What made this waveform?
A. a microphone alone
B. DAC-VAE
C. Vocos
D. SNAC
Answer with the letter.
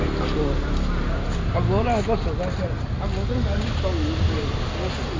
A